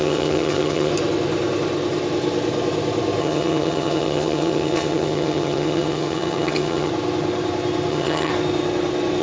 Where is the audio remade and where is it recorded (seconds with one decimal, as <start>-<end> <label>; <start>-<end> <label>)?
0.0-0.9 remade; 0.9-3.2 recorded; 3.2-6.9 remade; 6.9-7.9 recorded; 7.9-8.3 remade; 8.3-9.2 recorded